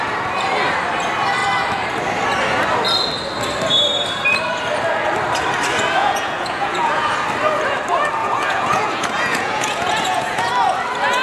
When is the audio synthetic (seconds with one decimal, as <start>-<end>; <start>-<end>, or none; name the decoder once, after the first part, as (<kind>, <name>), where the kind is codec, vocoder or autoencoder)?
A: 6.0-7.1 (vocoder, Vocos); 8.2-10.5